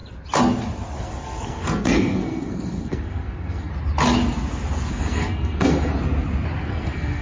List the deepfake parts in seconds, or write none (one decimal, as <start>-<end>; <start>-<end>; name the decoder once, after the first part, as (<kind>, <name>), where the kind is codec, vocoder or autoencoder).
1.0-3.7 (codec, SNAC); 4.9-5.9; 6.6-7.2